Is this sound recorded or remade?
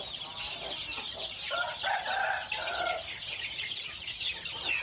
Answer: recorded